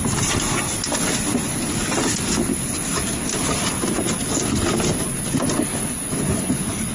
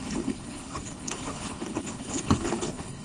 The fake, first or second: second